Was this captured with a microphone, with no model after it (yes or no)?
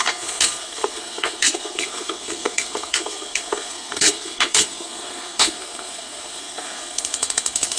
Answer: no